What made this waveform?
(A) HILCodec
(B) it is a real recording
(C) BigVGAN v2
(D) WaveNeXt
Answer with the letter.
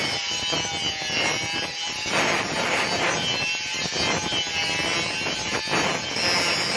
B